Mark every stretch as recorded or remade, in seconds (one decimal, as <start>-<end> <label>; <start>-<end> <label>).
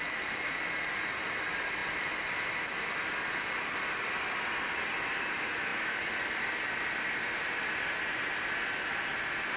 0.0-9.6 recorded